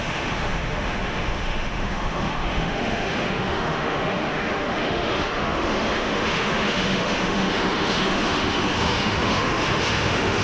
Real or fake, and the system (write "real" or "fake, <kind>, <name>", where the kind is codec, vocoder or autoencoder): fake, autoencoder, DAC-VAE